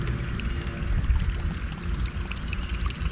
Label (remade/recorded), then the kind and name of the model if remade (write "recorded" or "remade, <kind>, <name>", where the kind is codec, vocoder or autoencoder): recorded